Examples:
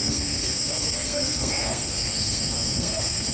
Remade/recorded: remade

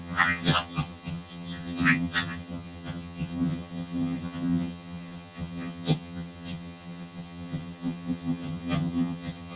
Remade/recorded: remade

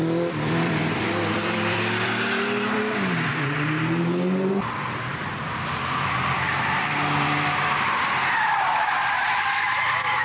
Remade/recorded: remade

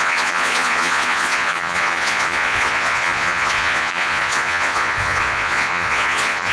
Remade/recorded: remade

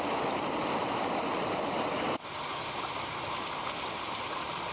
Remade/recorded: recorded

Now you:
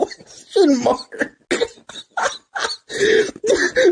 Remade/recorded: recorded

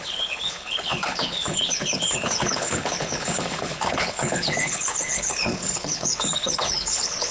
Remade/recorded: remade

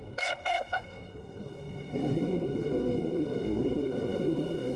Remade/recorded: remade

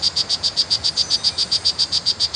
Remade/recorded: recorded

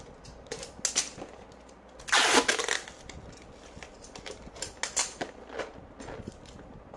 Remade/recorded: recorded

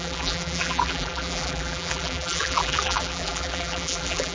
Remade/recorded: remade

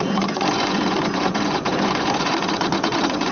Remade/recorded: remade